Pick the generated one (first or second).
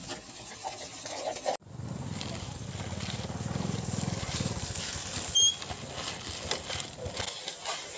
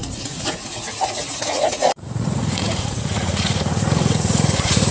second